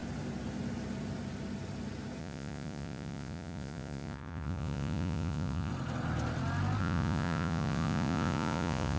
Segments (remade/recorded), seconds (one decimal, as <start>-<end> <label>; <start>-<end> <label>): 0.0-2.2 recorded; 2.2-5.7 remade; 5.7-6.8 recorded; 6.8-9.0 remade